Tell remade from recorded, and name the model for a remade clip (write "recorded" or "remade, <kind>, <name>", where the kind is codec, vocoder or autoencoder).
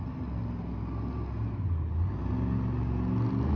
recorded